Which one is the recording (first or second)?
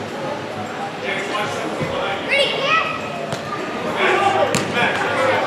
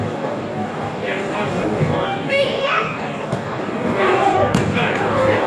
first